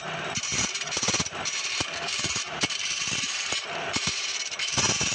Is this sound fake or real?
fake